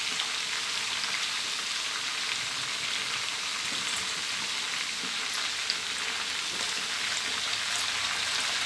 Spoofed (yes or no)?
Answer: no